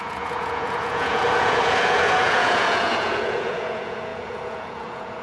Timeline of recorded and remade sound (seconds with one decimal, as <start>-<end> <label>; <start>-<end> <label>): 0.0-5.2 remade